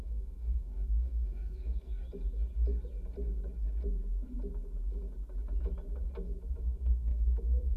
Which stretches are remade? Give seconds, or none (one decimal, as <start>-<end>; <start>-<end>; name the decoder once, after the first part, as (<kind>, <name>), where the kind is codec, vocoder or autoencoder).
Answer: 0.0-2.0 (codec, SNAC); 6.6-7.8